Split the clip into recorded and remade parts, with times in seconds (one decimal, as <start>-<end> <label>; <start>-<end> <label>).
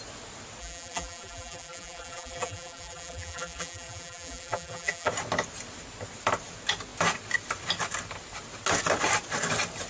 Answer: 0.0-0.6 recorded; 0.6-5.1 remade; 5.1-9.9 recorded